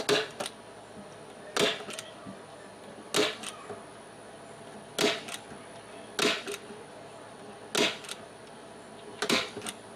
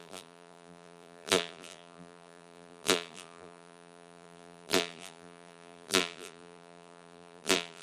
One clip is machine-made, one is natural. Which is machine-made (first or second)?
second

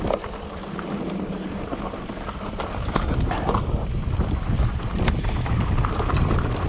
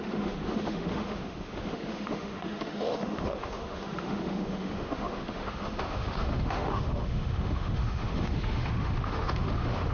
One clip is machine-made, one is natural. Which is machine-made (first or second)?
second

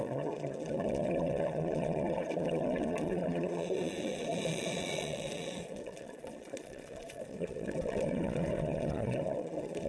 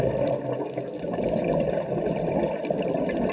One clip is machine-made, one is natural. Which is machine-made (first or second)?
first